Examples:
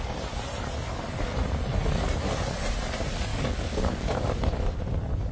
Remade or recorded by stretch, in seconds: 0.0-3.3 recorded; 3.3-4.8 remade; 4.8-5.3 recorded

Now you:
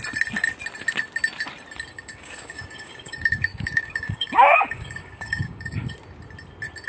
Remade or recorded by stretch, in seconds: 0.0-1.9 recorded; 1.9-5.9 remade; 5.9-6.9 recorded

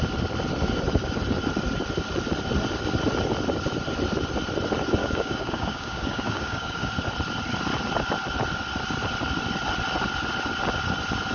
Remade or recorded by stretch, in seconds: 0.0-5.0 recorded; 5.0-6.9 remade; 6.9-11.3 recorded

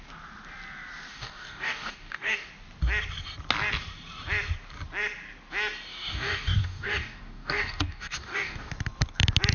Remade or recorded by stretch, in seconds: 0.0-1.1 recorded; 1.1-2.5 remade; 2.5-5.9 recorded; 5.9-8.7 remade; 8.7-9.5 recorded

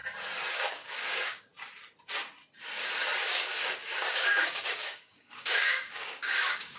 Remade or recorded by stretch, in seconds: 0.0-0.5 recorded; 0.5-1.5 remade; 1.5-3.2 recorded; 3.2-6.8 remade

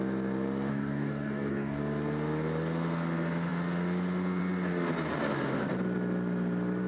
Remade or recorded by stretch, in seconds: 0.0-0.7 recorded; 0.7-1.8 remade; 1.8-6.9 recorded

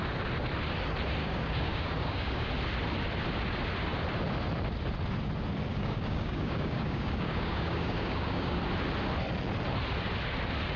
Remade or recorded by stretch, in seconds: 0.0-1.2 recorded; 1.2-2.5 remade; 2.5-5.7 recorded; 5.7-8.6 remade; 8.6-10.8 recorded